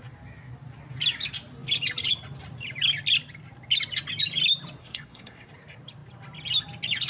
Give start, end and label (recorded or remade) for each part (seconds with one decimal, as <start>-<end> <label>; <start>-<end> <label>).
0.0-4.8 recorded; 4.8-5.5 remade; 5.5-7.1 recorded